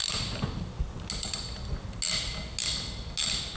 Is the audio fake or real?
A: real